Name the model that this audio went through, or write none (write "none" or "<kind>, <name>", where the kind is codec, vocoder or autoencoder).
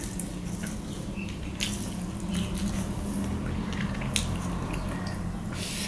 none